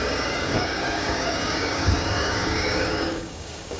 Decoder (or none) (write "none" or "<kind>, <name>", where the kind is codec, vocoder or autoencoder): codec, DAC